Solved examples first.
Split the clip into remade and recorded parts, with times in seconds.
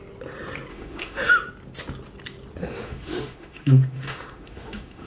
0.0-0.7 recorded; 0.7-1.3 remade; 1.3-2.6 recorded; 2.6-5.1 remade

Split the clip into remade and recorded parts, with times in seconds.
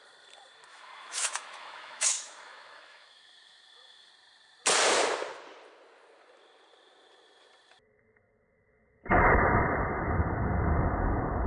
0.0-0.7 recorded; 0.7-4.1 remade; 4.1-11.5 recorded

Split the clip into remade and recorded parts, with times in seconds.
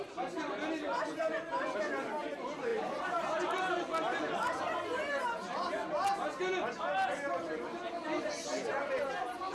0.0-9.5 recorded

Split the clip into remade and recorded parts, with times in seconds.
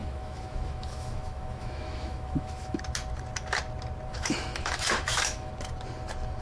0.0-2.8 remade; 2.8-4.1 recorded; 4.1-5.5 remade; 5.5-6.4 recorded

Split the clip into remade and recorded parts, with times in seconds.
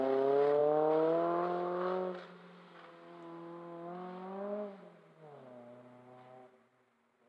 0.0-7.3 recorded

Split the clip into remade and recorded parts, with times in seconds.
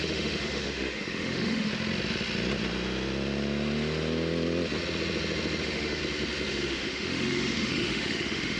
0.0-1.7 remade; 1.7-5.6 recorded; 5.6-6.0 remade; 6.0-6.5 recorded; 6.5-8.6 remade